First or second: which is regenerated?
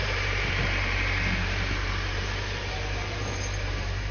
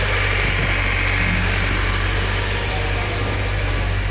first